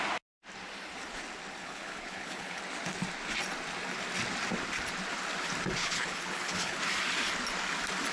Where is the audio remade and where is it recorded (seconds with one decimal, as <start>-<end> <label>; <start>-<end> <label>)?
0.0-1.6 recorded; 1.6-2.6 remade; 2.6-5.8 recorded; 5.8-6.8 remade; 6.8-8.1 recorded